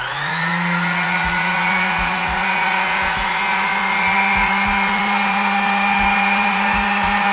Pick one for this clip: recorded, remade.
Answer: remade